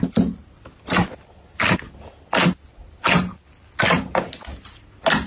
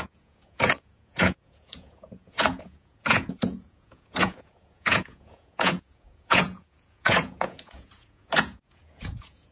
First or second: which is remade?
second